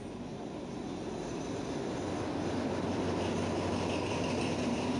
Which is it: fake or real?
real